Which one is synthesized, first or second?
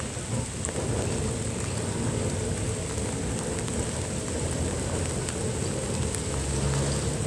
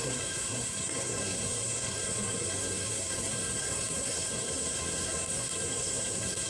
second